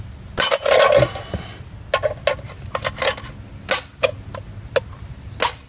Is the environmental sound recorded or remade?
recorded